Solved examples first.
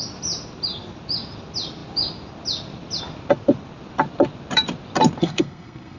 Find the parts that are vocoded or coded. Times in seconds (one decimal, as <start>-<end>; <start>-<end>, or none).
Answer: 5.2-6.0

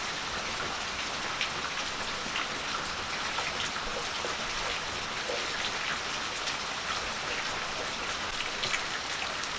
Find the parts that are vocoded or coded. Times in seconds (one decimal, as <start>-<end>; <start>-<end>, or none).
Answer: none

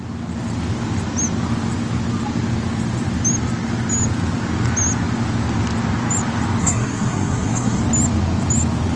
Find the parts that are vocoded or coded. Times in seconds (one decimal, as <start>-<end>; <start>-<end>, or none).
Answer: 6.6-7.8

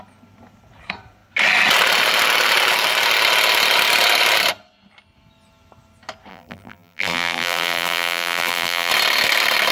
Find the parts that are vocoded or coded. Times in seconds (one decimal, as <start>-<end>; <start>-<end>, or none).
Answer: 6.3-8.9

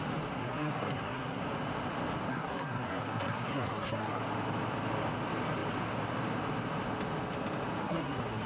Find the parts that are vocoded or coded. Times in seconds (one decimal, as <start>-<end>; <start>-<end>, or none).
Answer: 0.4-1.4; 2.3-4.2; 7.8-8.5